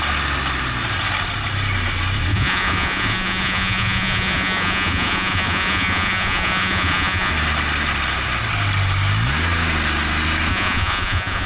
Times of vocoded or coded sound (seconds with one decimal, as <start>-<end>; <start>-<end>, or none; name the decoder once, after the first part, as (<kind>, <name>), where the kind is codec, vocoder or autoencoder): 2.3-7.3 (vocoder, Vocos); 10.5-11.5